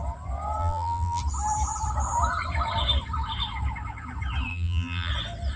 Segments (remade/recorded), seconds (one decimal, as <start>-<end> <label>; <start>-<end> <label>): 0.0-0.6 recorded; 0.6-1.2 remade; 1.2-4.5 recorded; 4.5-5.1 remade; 5.1-5.6 recorded